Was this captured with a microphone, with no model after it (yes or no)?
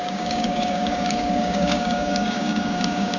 no